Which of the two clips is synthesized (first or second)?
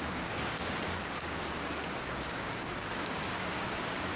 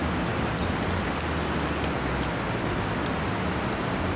first